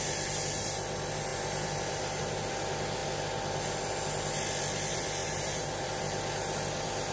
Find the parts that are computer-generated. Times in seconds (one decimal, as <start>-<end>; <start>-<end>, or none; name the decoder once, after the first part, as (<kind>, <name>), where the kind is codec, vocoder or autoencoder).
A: 1.3-2.2 (vocoder, BigVGAN v2); 5.2-6.0